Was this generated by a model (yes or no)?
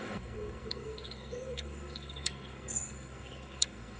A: yes